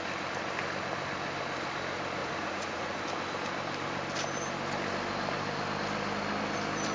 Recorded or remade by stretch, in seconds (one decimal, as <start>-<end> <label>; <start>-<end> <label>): 0.0-2.2 recorded; 2.2-3.0 remade; 3.0-6.9 recorded